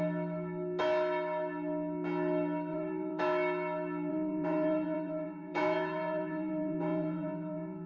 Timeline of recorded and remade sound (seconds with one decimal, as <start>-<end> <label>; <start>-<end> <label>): 0.0-2.7 recorded; 2.7-3.2 remade; 3.2-4.1 recorded; 4.1-7.9 remade